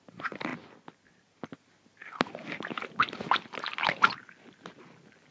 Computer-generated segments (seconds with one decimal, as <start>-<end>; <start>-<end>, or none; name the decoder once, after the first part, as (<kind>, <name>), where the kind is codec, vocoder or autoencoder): none